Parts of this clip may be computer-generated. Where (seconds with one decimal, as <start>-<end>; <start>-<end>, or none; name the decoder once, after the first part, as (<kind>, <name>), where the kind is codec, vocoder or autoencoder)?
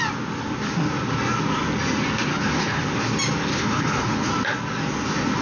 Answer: 2.3-2.8 (codec, HILCodec); 3.5-4.3